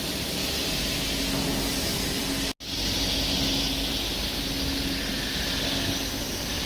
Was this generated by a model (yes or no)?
no